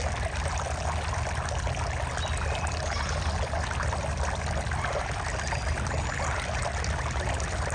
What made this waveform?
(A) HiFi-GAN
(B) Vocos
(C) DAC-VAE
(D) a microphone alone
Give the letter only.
D